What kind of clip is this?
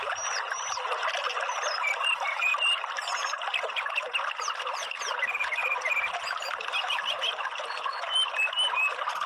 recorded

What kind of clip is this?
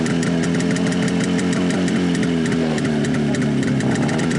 recorded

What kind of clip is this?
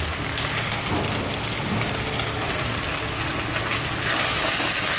recorded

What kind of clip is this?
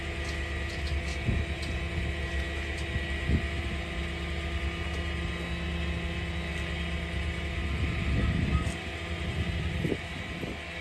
recorded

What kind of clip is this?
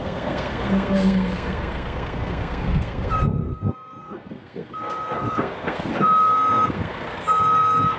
remade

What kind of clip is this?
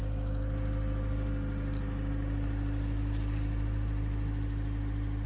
recorded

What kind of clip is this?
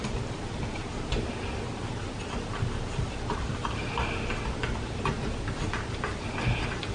recorded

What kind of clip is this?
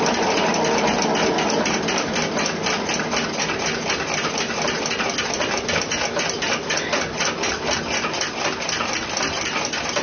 recorded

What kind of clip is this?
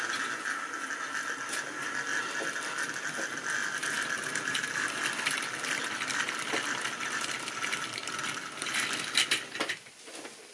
recorded